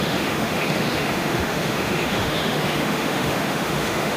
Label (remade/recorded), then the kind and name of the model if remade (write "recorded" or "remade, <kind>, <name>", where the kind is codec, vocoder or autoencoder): remade, autoencoder, DAC-VAE